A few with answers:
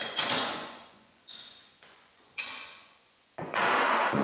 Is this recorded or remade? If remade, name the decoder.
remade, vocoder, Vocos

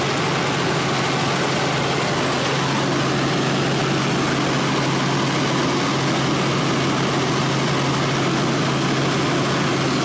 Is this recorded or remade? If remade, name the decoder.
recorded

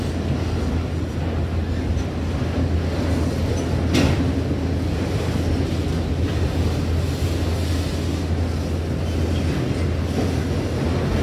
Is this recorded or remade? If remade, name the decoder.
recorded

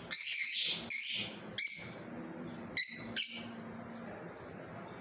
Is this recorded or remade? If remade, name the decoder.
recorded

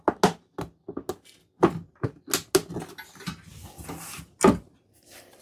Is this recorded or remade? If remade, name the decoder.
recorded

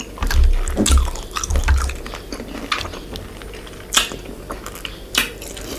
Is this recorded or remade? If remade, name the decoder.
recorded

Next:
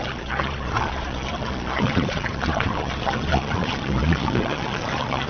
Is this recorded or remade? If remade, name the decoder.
remade, vocoder, Vocos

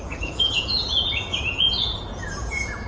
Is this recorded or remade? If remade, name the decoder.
remade, vocoder, Vocos